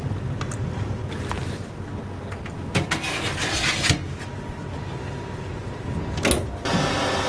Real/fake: real